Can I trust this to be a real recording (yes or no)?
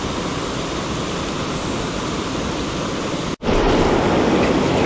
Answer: yes